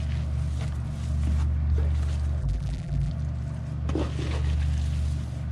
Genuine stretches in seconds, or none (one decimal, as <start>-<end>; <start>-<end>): 0.0-2.4; 3.1-5.5